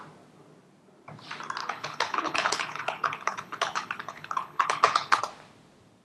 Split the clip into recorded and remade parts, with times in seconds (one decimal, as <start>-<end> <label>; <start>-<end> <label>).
0.0-1.6 recorded; 1.6-5.2 remade; 5.2-6.0 recorded

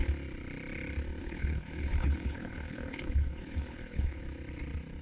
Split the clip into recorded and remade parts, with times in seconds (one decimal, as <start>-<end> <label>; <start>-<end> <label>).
0.0-1.2 recorded; 1.2-4.2 remade; 4.2-5.0 recorded

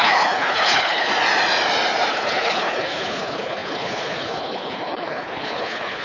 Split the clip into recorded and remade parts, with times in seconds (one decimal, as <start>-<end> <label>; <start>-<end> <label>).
0.0-1.1 remade; 1.1-2.1 recorded; 2.1-6.0 remade